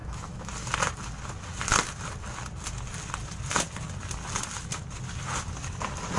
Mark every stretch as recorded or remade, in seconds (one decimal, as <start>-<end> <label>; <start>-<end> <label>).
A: 0.0-0.5 remade; 0.5-6.2 recorded